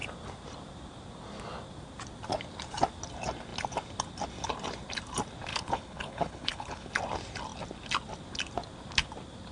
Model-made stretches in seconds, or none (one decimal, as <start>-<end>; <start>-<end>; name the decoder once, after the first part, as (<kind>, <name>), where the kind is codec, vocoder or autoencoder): 5.5-6.9 (codec, HILCodec)